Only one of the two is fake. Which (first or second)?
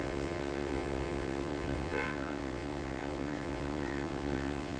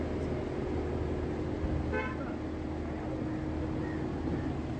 first